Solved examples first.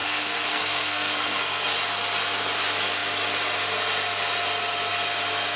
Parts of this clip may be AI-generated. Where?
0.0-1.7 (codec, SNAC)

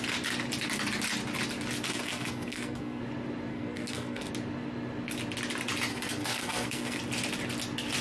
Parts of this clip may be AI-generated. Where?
1.9-3.0 (codec, SNAC); 3.5-4.3; 5.9-7.0

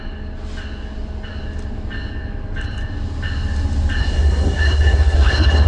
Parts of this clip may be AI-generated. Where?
4.0-5.7 (codec, SNAC)

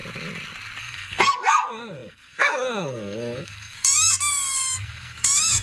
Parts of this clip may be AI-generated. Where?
0.8-5.6 (codec, SNAC)

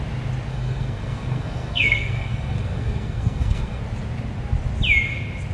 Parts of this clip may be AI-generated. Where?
0.5-3.8 (codec, SNAC)

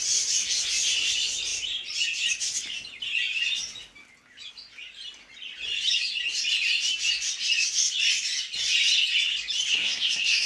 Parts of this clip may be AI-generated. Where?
9.7-10.5 (codec, SNAC)

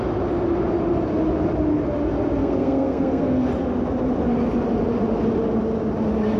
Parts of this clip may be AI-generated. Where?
2.4-3.5 (codec, SNAC)